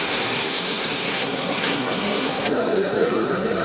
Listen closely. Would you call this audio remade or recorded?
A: remade